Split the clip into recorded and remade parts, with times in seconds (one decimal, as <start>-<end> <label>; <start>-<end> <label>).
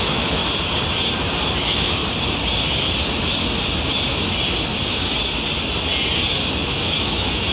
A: 0.0-0.4 remade; 0.4-1.6 recorded; 1.6-2.0 remade; 2.0-6.5 recorded; 6.5-7.5 remade